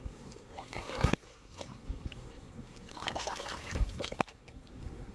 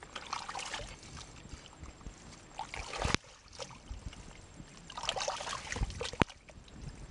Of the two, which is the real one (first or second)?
second